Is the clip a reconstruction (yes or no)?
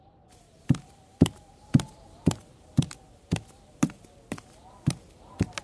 no